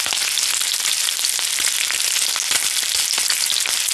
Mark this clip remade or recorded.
recorded